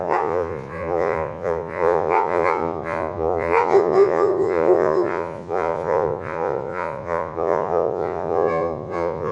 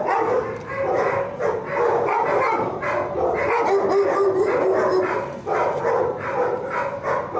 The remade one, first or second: first